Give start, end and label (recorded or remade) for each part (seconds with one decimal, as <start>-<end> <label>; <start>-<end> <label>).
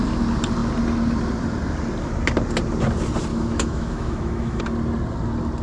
0.0-3.3 recorded; 3.3-4.6 remade; 4.6-5.6 recorded